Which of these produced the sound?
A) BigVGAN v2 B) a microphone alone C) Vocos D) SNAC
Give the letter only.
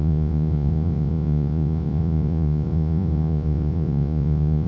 C